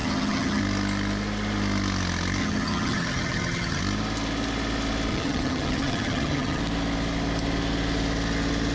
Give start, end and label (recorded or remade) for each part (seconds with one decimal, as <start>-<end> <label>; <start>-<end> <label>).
0.0-0.6 remade; 0.6-2.4 recorded; 2.4-3.8 remade; 3.8-5.1 recorded; 5.1-6.6 remade; 6.6-8.7 recorded